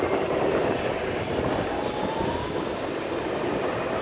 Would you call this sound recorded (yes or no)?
yes